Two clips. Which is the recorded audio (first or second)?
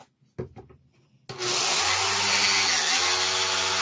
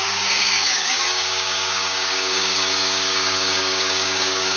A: first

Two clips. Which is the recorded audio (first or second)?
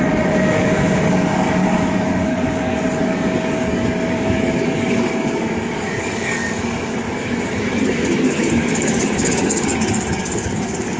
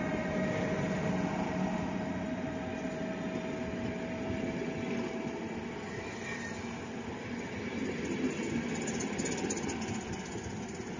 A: second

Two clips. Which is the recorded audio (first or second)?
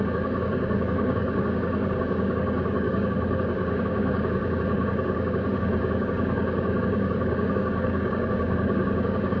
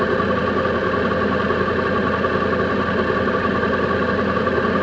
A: second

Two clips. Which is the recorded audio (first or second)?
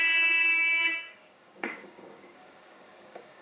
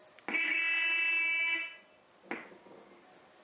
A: second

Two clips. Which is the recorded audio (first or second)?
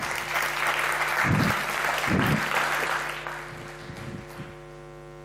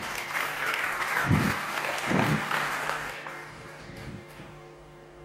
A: first